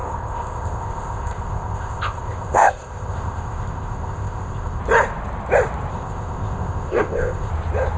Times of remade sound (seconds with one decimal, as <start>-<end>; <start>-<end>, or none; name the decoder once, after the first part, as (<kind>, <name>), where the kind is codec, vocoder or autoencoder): 0.0-4.8 (codec, ZipCodec); 5.9-7.5